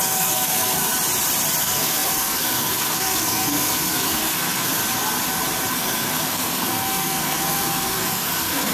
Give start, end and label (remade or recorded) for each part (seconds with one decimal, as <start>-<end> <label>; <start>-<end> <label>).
0.0-0.9 remade; 0.9-1.6 recorded; 1.6-4.8 remade; 4.8-5.7 recorded; 5.7-8.7 remade